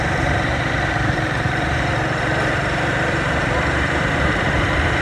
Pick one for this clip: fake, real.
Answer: fake